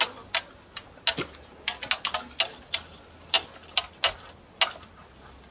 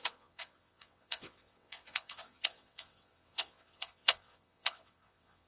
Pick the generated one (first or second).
second